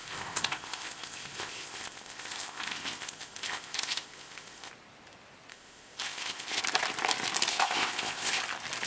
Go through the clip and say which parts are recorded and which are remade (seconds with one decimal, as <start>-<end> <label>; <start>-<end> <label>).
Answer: 0.0-4.7 remade; 4.7-5.5 recorded; 5.5-6.6 remade; 6.6-7.5 recorded; 7.5-8.4 remade; 8.4-8.9 recorded